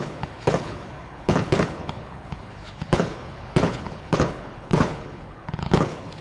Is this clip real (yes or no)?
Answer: no